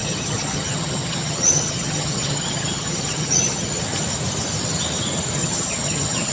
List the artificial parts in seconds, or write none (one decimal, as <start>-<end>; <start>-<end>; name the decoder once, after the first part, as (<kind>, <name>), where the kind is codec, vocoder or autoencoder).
0.0-3.8 (vocoder, HiFi-GAN); 5.4-6.3